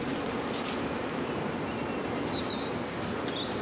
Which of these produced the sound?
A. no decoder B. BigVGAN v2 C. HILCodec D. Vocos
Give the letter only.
B